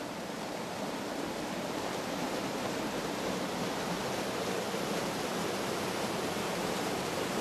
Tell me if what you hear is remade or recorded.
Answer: remade